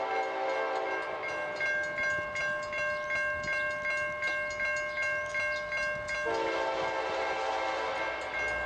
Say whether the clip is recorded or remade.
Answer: recorded